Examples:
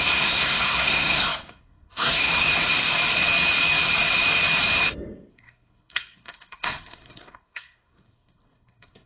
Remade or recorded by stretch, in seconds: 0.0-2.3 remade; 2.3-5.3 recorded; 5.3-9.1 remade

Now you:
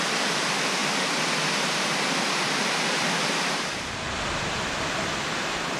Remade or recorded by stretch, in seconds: 0.0-0.8 remade; 0.8-1.5 recorded; 1.5-5.8 remade

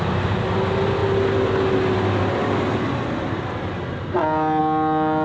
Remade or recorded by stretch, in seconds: 0.0-5.2 recorded

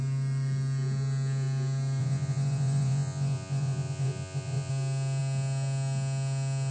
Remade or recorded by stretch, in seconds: 0.0-2.0 recorded; 2.0-4.7 remade; 4.7-6.7 recorded

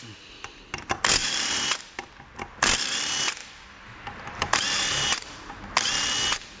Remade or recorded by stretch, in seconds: 0.0-1.2 recorded; 1.2-1.8 remade; 1.8-3.4 recorded; 3.4-5.7 remade; 5.7-6.6 recorded